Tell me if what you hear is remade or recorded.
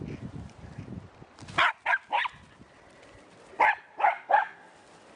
recorded